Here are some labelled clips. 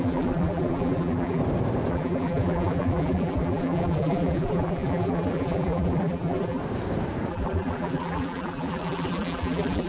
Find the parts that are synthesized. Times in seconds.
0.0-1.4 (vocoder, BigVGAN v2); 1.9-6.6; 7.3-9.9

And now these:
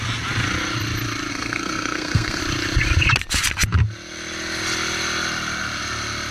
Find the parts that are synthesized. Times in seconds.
1.3-2.4 (codec, SNAC)

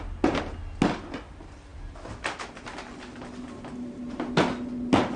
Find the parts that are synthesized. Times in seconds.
none

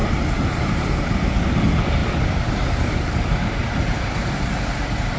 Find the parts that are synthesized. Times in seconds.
0.0-1.0 (vocoder, BigVGAN v2); 2.0-4.5

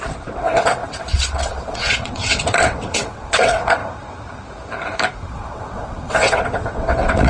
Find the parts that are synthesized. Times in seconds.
0.0-3.8 (vocoder, WaveNeXt); 5.3-7.3

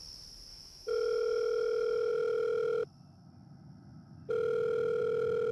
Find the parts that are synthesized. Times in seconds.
0.5-2.1 (autoencoder, DAC-VAE)

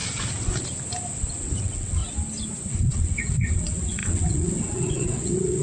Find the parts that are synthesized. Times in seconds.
1.6-2.0 (vocoder, WaveNeXt); 2.7-5.6